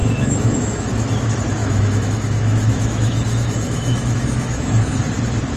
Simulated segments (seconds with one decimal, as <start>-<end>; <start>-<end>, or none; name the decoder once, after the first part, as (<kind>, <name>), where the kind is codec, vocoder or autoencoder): 0.0-0.9 (autoencoder, DAC-VAE); 1.6-5.0